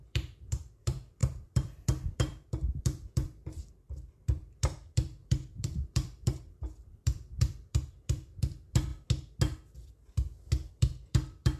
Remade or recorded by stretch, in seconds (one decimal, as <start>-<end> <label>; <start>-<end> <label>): 0.0-8.9 remade; 8.9-10.7 recorded; 10.7-11.6 remade